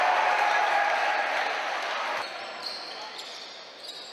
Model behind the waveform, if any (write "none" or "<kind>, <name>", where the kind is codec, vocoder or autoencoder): none